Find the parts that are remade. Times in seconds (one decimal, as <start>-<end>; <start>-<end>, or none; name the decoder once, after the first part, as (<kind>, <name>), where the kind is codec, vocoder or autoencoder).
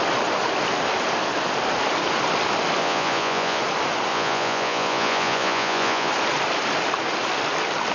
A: 2.8-3.6 (vocoder, Vocos); 4.1-6.1